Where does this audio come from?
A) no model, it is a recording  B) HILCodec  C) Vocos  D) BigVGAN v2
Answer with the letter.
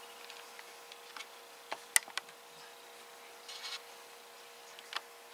A